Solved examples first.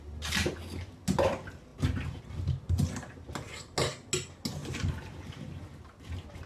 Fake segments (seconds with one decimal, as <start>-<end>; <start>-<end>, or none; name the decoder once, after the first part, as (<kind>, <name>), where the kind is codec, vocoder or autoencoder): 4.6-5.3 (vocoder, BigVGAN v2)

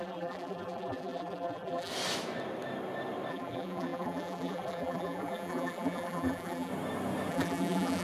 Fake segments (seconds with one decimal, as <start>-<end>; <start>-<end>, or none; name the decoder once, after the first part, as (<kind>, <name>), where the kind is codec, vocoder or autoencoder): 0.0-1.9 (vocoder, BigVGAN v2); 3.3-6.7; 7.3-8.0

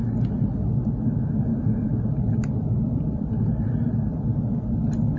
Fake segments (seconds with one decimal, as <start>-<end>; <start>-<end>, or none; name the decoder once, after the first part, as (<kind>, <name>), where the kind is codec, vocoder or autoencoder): 1.5-4.6 (vocoder, BigVGAN v2)